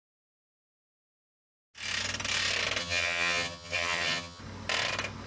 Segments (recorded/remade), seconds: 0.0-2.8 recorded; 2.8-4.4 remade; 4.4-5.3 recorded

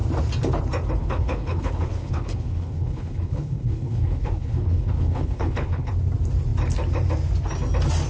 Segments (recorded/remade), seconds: 0.0-1.0 recorded; 1.0-5.9 remade; 5.9-8.1 recorded

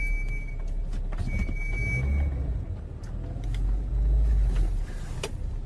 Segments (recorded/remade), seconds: 0.0-5.7 recorded